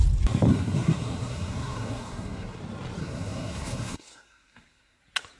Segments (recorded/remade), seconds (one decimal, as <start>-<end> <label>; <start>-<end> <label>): 0.0-0.5 recorded; 0.5-2.6 remade; 2.6-3.0 recorded; 3.0-5.0 remade; 5.0-5.4 recorded